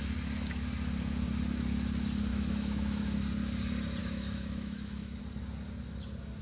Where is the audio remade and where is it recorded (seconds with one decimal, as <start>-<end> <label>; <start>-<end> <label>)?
0.0-2.3 recorded; 2.3-3.2 remade; 3.2-4.0 recorded; 4.0-5.2 remade; 5.2-6.4 recorded